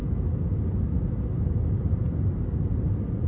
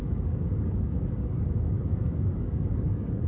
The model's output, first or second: second